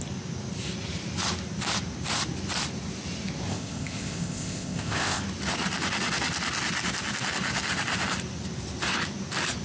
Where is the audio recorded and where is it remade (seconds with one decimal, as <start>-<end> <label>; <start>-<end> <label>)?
0.0-3.5 recorded; 3.5-5.2 remade; 5.2-9.6 recorded